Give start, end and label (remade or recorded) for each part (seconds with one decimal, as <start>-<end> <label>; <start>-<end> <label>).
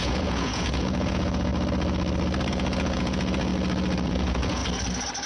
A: 0.0-1.5 remade; 1.5-2.5 recorded; 2.5-3.5 remade; 3.5-4.1 recorded; 4.1-4.6 remade; 4.6-5.3 recorded